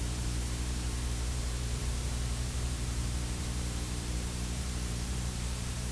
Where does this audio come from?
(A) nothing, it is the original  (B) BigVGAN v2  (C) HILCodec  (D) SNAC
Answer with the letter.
B